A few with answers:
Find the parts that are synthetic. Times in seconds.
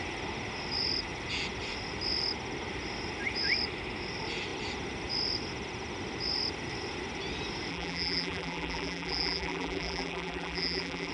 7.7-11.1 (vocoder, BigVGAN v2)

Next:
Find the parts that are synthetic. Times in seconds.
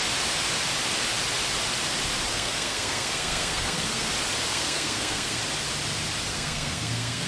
2.3-4.1 (codec, SNAC); 4.5-5.4; 6.3-7.3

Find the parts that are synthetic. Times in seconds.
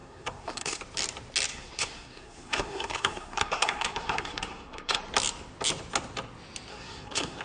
0.0-0.8 (codec, SNAC); 1.5-5.0; 6.7-7.4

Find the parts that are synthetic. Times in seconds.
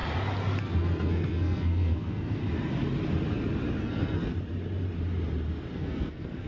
0.6-2.4 (codec, SNAC); 3.8-4.3; 5.7-6.5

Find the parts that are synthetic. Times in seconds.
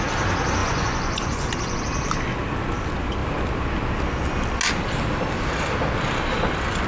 0.6-1.8 (vocoder, Vocos)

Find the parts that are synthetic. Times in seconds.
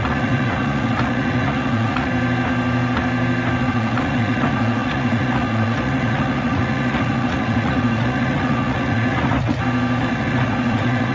0.0-2.1 (vocoder, Vocos); 3.6-9.6; 10.1-11.1